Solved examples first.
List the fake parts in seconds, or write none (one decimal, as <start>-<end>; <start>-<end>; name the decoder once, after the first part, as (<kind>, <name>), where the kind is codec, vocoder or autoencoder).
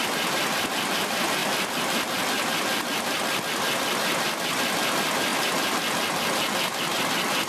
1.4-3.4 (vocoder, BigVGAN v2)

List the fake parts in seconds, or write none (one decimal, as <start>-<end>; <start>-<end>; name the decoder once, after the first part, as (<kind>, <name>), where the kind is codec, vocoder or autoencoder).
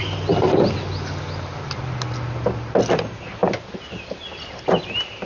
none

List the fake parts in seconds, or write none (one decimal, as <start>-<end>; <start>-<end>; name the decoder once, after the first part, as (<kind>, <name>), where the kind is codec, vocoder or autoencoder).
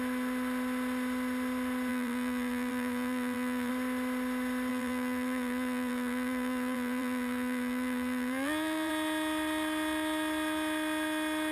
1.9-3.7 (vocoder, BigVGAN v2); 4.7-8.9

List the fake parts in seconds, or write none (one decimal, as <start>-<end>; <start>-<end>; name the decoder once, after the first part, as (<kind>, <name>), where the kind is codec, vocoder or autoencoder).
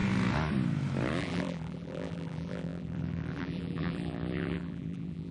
1.2-5.3 (vocoder, BigVGAN v2)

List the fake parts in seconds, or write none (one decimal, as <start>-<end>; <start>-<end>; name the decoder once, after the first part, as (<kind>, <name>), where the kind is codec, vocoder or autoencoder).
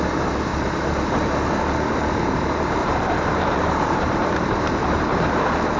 0.5-1.3 (vocoder, BigVGAN v2); 2.8-4.7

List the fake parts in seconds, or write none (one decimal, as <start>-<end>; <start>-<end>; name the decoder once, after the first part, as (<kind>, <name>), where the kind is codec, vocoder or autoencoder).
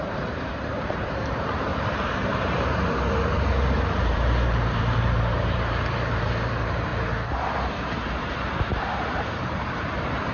0.0-1.7 (vocoder, BigVGAN v2); 2.4-6.9; 7.8-10.3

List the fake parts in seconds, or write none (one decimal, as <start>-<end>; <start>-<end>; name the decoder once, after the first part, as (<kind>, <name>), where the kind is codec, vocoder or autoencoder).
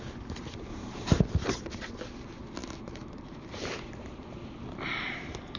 0.7-1.2 (vocoder, BigVGAN v2); 2.6-5.6